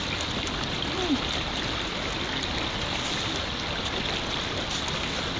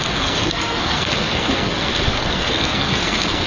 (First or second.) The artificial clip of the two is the second